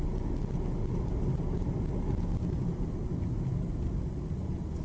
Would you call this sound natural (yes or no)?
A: yes